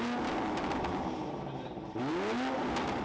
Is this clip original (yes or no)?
yes